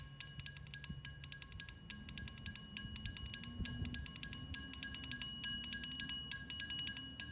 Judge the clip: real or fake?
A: real